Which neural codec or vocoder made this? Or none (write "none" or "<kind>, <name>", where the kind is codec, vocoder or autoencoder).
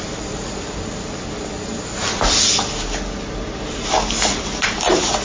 none